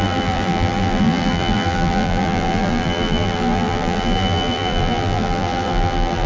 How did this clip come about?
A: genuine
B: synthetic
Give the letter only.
B